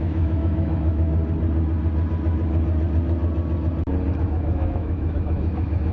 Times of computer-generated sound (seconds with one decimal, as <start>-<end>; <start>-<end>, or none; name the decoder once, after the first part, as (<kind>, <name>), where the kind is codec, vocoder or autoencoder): 0.0-1.2 (autoencoder, DAC-VAE); 4.2-5.9